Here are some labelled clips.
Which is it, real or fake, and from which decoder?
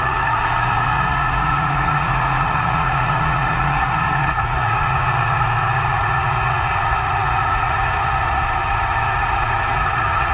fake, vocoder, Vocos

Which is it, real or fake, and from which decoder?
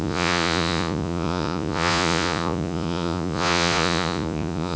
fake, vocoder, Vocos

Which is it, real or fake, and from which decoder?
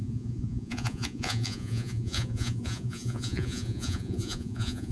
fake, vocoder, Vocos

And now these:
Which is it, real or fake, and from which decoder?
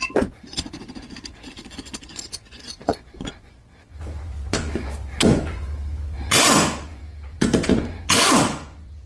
fake, vocoder, Vocos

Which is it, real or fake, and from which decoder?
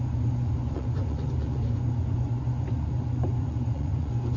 fake, vocoder, Vocos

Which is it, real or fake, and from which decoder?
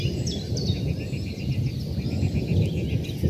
real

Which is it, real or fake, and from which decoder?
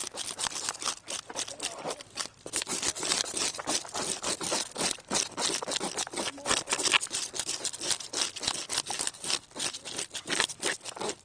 real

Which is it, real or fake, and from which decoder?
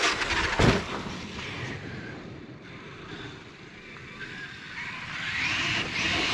real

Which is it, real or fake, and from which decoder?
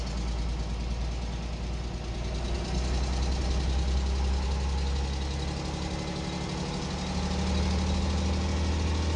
real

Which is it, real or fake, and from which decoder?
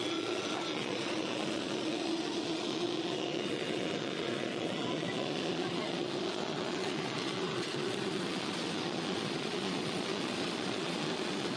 fake, vocoder, Vocos